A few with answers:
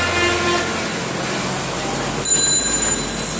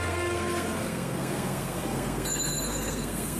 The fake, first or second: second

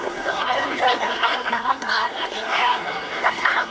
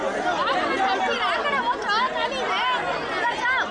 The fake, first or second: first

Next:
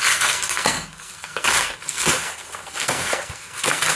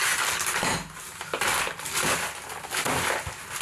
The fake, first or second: first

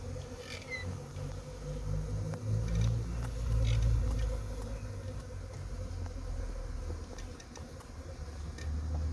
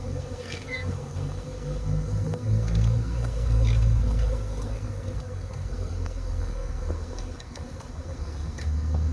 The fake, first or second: second